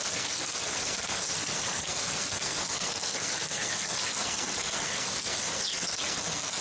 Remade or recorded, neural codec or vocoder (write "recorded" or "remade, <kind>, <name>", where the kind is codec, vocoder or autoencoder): remade, codec, SNAC